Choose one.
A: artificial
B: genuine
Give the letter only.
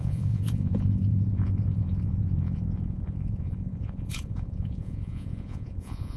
A